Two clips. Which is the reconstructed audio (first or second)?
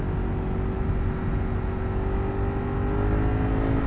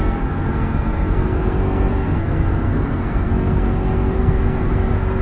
second